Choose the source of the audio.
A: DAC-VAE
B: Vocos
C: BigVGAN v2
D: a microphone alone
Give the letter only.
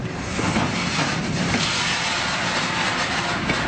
D